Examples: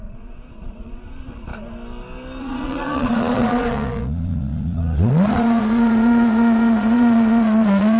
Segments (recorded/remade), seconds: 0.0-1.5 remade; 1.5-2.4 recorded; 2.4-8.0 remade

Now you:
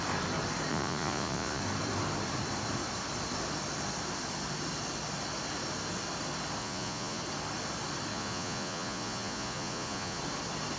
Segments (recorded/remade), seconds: 0.0-0.7 recorded; 0.7-1.6 remade; 1.6-6.6 recorded; 6.6-7.2 remade; 7.2-8.1 recorded; 8.1-10.2 remade; 10.2-10.8 recorded

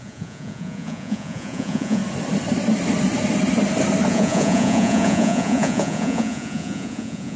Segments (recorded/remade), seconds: 0.0-2.0 remade; 2.0-4.1 recorded; 4.1-7.4 remade

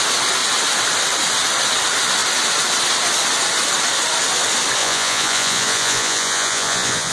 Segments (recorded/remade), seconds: 0.0-4.8 recorded; 4.8-7.1 remade

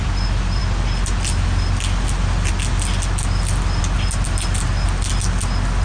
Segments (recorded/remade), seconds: 0.0-5.8 recorded

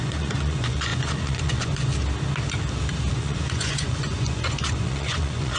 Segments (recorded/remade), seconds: 0.0-1.9 remade; 1.9-3.1 recorded; 3.1-5.6 remade

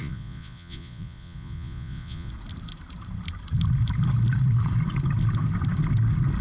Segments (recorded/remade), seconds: 0.0-2.3 remade; 2.3-6.4 recorded

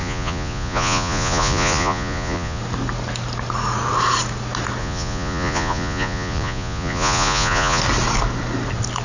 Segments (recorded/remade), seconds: 0.0-2.6 remade; 2.6-4.8 recorded; 4.8-7.8 remade; 7.8-9.0 recorded